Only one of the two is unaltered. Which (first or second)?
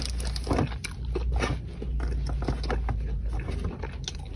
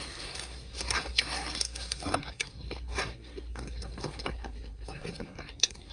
first